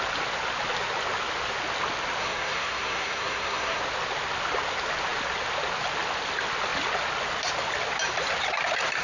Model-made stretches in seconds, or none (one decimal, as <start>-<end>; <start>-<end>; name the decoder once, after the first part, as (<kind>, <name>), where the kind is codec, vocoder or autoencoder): 2.2-3.8 (codec, SNAC)